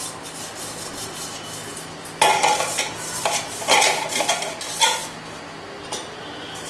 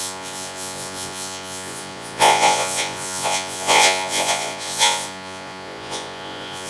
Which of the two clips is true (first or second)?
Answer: first